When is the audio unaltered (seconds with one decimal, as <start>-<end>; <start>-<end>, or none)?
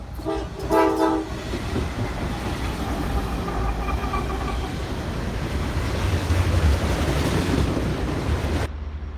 0.0-5.1; 6.7-7.4; 7.9-9.2